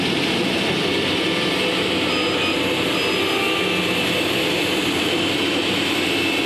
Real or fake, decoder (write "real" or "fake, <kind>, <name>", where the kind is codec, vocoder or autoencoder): real